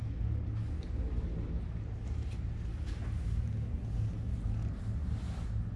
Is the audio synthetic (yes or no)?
no